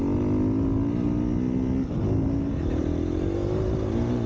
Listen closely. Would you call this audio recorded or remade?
recorded